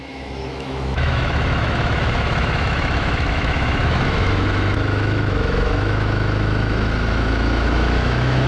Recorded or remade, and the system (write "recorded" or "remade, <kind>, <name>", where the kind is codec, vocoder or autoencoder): remade, autoencoder, DAC-VAE